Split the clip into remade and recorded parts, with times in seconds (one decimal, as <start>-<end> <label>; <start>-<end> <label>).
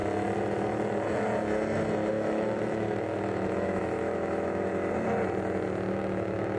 0.0-2.1 recorded; 2.1-4.7 remade; 4.7-5.9 recorded; 5.9-6.6 remade